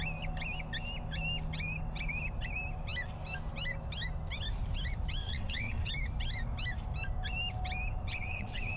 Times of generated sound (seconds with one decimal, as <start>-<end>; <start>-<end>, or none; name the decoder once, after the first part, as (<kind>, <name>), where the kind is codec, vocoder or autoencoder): 5.2-5.9 (vocoder, WaveNeXt); 8.1-8.8